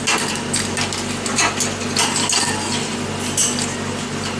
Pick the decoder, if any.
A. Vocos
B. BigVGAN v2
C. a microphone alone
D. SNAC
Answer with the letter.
C